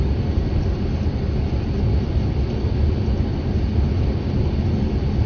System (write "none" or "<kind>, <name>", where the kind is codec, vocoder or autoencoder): none